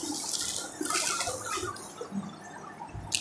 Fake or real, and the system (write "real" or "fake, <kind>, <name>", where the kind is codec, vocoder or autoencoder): real